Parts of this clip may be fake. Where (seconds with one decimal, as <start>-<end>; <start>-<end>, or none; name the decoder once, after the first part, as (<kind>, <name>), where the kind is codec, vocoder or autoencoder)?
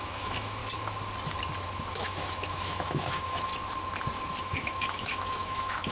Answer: 0.0-0.6 (autoencoder, DAC-VAE); 1.9-3.5; 4.4-5.9